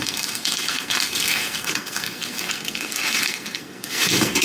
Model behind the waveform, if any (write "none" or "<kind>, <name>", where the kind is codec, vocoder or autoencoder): codec, SNAC